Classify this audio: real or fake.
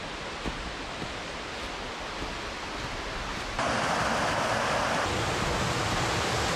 real